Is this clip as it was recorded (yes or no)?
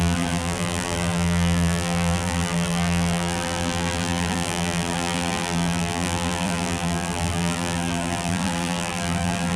no